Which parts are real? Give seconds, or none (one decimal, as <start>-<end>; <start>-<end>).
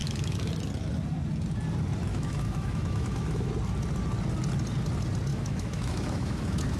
0.5-2.1; 3.5-5.3